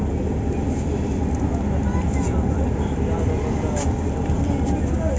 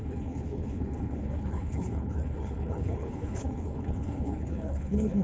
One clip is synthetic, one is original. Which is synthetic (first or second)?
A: second